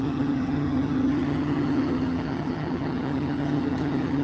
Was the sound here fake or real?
fake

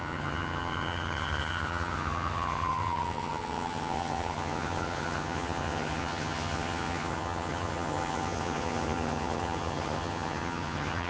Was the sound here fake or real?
fake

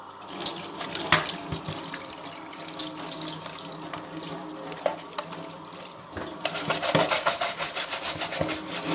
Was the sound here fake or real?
real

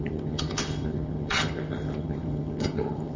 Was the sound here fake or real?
fake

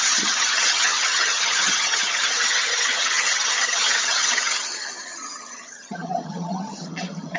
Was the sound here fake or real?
fake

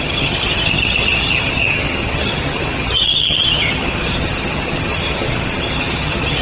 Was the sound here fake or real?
fake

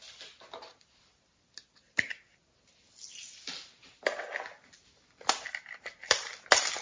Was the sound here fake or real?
real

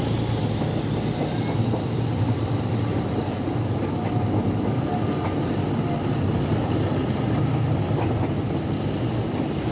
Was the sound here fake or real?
real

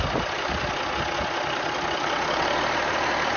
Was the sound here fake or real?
real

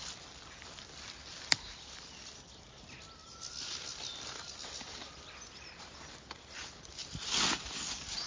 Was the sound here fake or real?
real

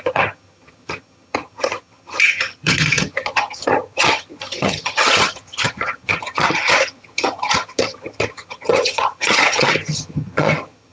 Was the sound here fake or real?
fake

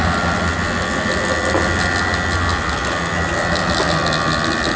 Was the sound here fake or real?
real